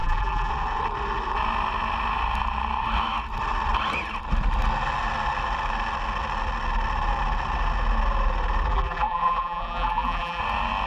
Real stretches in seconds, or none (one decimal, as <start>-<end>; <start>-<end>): 0.5-8.7; 10.4-10.9